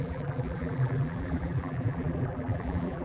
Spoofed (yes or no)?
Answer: yes